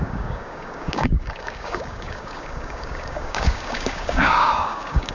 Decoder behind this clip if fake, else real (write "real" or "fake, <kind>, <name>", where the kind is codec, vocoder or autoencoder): fake, codec, DAC